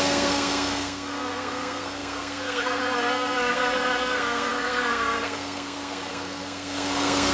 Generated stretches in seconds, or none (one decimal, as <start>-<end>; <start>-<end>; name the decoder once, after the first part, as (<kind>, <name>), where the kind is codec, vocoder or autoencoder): 0.0-7.3 (codec, SNAC)